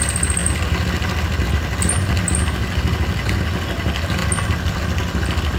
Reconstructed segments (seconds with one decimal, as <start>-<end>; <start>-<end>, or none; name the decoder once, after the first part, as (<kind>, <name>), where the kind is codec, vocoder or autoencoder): none